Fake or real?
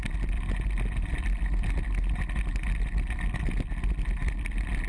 real